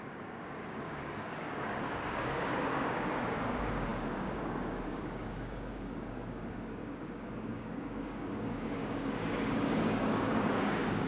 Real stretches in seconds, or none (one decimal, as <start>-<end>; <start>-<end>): none